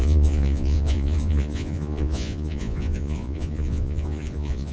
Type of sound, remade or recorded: remade